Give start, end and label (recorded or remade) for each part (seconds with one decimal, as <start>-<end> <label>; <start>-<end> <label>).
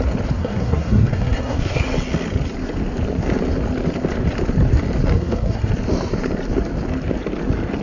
0.0-0.4 recorded; 0.4-1.8 remade; 1.8-5.1 recorded; 5.1-5.7 remade; 5.7-7.8 recorded